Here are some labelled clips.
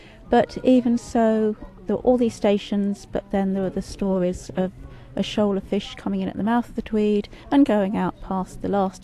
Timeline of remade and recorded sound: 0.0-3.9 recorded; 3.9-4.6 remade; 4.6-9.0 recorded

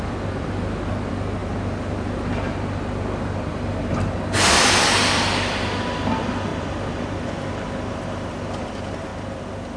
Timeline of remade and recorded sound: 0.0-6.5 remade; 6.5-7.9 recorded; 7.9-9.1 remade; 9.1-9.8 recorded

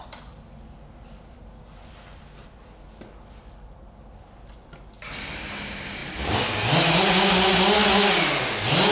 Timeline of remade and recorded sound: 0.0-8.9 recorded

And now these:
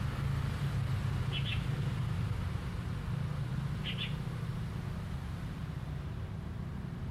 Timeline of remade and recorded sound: 0.0-1.5 recorded; 1.5-2.7 remade; 2.7-5.6 recorded; 5.6-6.3 remade; 6.3-7.1 recorded

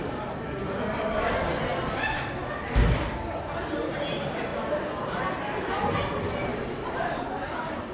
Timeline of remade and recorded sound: 0.0-6.5 recorded; 6.5-7.2 remade; 7.2-7.9 recorded

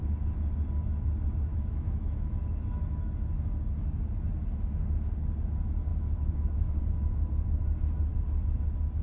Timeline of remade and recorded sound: 0.0-1.5 recorded; 1.5-3.3 remade; 3.3-5.9 recorded; 5.9-6.8 remade; 6.8-9.0 recorded

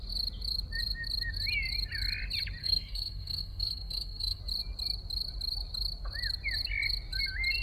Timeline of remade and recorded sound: 0.0-2.6 recorded; 2.6-4.4 remade; 4.4-7.6 recorded